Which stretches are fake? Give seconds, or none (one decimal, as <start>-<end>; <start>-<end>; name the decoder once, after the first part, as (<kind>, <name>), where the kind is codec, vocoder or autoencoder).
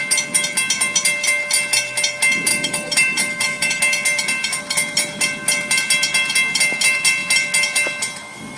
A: 2.5-3.8 (autoencoder, DAC-VAE)